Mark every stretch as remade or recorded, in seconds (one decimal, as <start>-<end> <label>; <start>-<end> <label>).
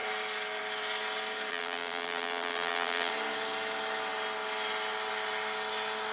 0.0-1.5 recorded; 1.5-3.1 remade; 3.1-6.1 recorded